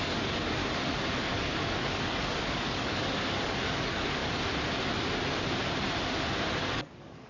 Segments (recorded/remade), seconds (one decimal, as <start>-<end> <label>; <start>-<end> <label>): 0.0-0.6 remade; 0.6-1.2 recorded; 1.2-4.2 remade; 4.2-6.6 recorded; 6.6-7.3 remade